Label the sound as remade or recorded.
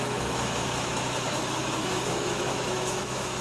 remade